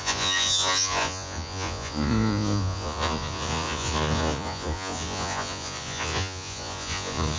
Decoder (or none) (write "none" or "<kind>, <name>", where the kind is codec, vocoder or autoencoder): vocoder, Vocos